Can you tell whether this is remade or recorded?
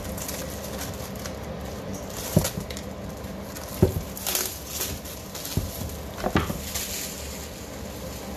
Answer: recorded